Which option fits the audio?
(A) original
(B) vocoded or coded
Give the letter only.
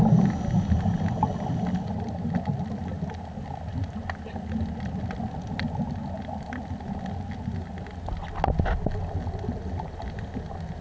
A